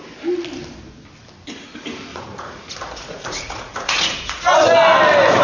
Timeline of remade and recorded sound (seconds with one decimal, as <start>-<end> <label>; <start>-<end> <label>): 0.0-2.1 recorded; 2.1-4.7 remade; 4.7-5.4 recorded